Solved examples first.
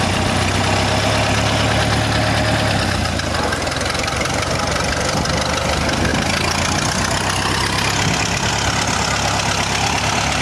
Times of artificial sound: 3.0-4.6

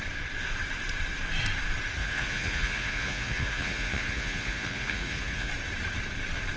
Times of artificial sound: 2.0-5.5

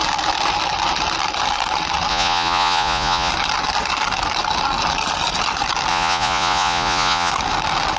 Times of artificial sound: 2.1-3.3; 5.9-7.3